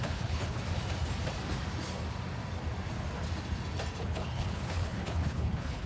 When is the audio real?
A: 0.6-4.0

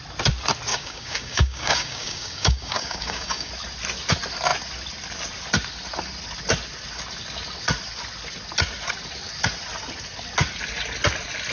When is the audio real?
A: 0.0-0.7; 3.5-11.5